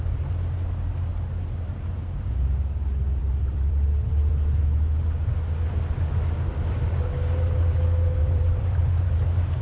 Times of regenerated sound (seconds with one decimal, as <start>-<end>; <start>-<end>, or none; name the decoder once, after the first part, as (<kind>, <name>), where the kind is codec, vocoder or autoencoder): 1.1-2.3 (vocoder, BigVGAN v2); 3.2-4.3; 8.2-8.8